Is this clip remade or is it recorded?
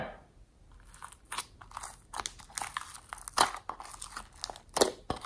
recorded